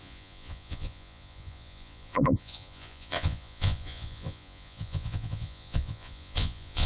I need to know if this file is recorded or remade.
remade